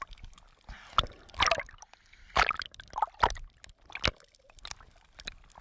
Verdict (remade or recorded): recorded